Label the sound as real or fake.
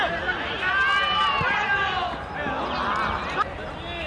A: real